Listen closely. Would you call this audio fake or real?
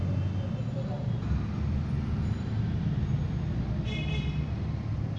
real